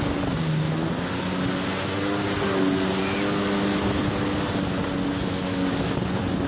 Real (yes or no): yes